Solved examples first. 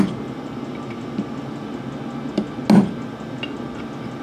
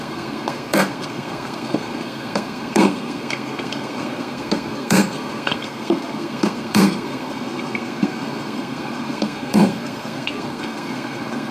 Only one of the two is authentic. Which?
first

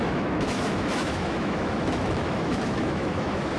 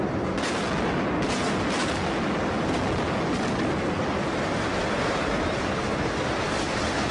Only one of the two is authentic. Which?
second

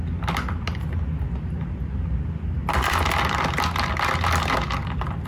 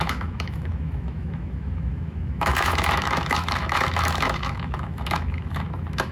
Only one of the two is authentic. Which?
first